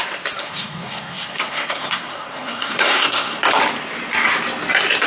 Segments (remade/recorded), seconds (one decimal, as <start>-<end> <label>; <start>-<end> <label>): 0.0-0.4 recorded; 0.4-3.4 remade; 3.4-5.1 recorded